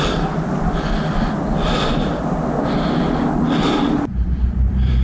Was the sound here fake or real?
real